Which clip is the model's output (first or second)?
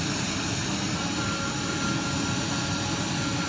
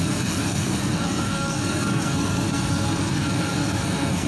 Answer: second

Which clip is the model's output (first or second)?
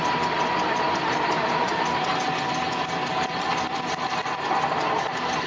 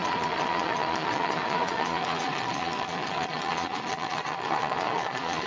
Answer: second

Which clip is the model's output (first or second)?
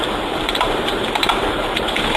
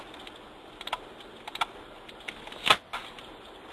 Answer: first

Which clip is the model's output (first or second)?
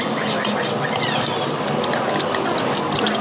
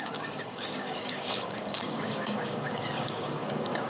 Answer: second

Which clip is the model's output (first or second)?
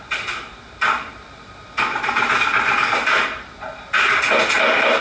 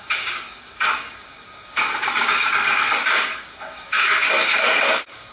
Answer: second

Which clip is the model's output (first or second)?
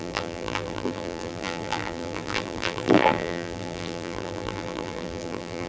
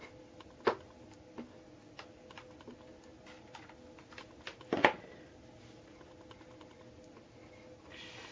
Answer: first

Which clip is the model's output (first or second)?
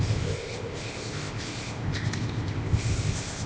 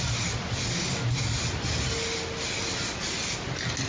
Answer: first